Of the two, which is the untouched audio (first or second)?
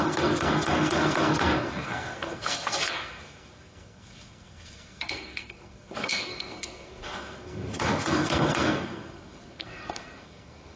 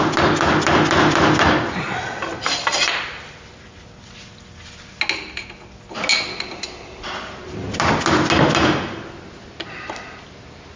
second